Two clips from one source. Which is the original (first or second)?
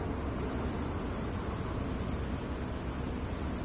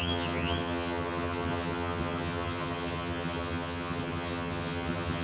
first